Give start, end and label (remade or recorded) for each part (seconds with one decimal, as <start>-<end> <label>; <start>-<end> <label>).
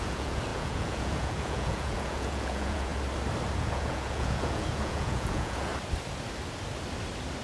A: 0.0-2.9 remade; 2.9-3.6 recorded; 3.6-5.7 remade; 5.7-7.4 recorded